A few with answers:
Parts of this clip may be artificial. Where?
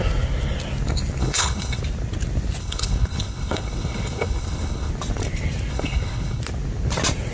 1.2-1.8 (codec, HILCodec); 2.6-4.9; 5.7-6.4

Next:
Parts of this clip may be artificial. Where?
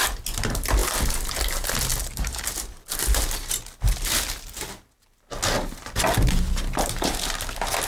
none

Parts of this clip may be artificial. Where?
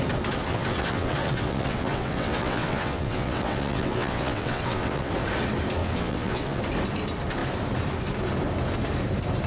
0.5-5.1 (vocoder, WaveNeXt); 5.8-6.6